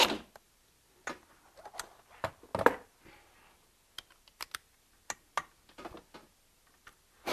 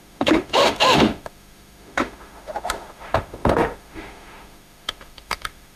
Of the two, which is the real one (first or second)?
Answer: first